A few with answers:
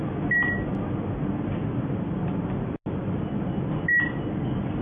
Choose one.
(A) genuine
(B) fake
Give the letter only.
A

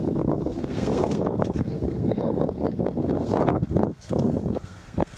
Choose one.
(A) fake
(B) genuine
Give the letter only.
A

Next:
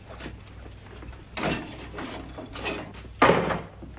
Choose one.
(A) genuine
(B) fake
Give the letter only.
A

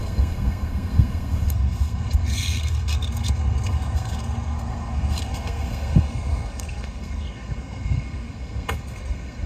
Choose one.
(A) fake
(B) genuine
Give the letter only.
A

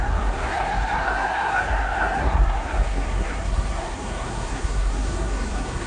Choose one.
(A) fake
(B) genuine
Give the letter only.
A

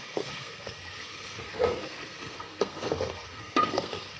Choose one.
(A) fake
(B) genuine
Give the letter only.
A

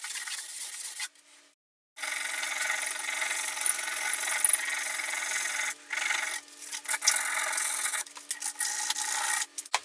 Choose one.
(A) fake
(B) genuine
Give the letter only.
B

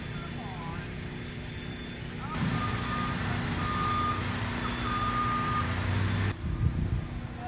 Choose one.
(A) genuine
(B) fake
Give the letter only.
A